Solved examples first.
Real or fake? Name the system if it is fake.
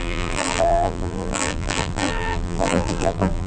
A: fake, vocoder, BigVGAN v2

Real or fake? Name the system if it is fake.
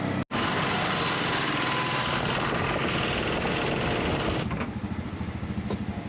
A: real